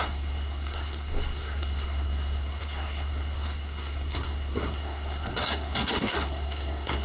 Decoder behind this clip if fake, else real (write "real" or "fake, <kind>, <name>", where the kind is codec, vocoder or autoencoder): fake, codec, SNAC